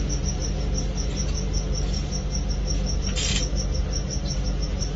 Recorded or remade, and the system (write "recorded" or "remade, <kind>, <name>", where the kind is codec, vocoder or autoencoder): recorded